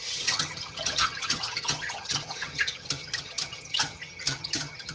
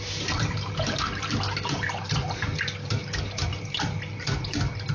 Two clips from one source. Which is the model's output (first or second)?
first